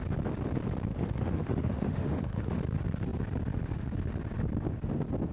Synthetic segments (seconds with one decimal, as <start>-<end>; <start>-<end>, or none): 0.9-2.5